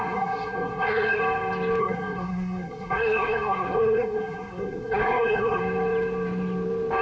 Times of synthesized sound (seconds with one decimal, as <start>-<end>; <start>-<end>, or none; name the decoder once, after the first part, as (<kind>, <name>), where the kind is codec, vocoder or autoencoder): 0.0-1.2 (codec, SNAC); 1.8-5.6